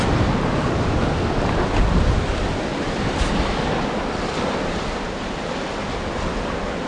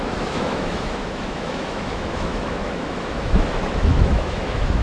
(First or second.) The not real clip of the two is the second